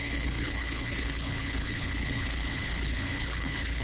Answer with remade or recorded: remade